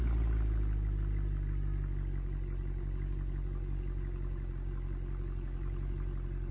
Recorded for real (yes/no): yes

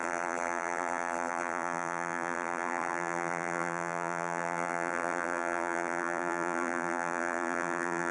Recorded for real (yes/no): no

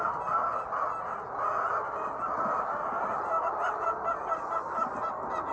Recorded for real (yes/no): yes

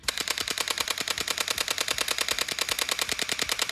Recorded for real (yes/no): no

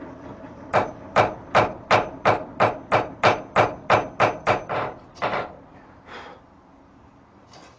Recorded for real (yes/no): yes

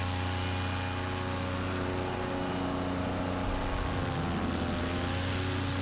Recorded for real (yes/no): yes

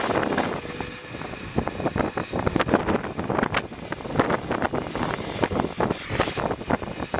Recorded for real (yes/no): yes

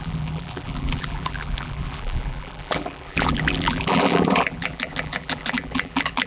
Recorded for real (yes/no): no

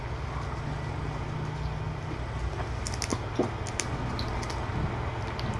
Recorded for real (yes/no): yes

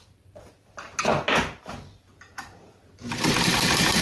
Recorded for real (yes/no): no